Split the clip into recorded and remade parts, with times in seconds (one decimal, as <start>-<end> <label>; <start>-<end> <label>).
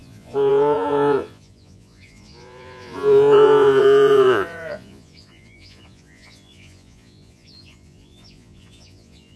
0.0-9.4 remade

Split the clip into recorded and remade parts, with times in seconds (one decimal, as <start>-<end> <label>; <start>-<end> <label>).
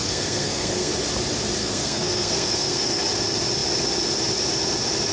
0.0-0.9 remade; 0.9-1.6 recorded; 1.6-3.0 remade; 3.0-5.1 recorded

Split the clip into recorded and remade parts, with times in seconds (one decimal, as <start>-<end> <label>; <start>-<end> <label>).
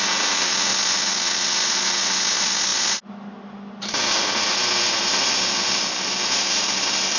0.0-7.2 recorded